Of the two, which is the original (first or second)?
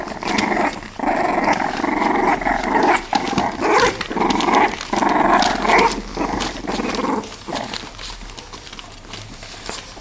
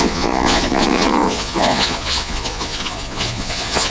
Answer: first